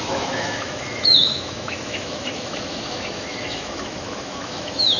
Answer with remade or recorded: remade